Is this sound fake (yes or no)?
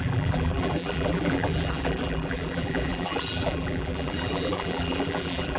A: yes